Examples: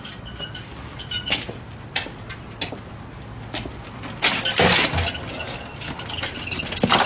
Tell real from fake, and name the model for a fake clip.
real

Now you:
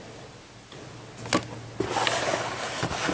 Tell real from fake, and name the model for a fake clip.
real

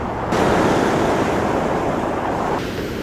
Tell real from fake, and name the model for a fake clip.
real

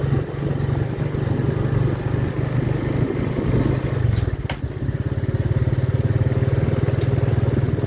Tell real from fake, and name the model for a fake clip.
real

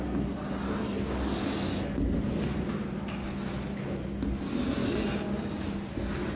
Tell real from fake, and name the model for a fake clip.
real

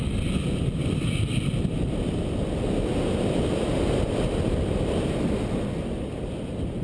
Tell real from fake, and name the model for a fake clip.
real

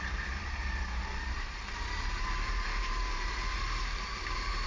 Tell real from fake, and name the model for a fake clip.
fake, vocoder, BigVGAN v2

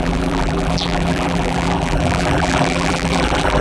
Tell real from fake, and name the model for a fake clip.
fake, vocoder, BigVGAN v2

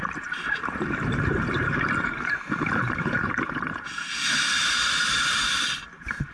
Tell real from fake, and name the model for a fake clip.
fake, vocoder, BigVGAN v2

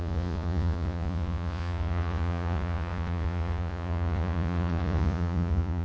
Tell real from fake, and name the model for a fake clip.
fake, vocoder, Vocos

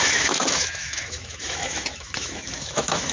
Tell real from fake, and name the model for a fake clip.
fake, autoencoder, DAC-VAE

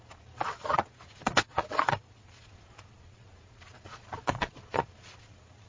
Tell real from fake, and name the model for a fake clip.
fake, vocoder, Vocos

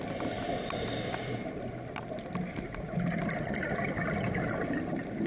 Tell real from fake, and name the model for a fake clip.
real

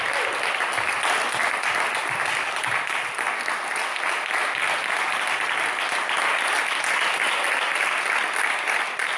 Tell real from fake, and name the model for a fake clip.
real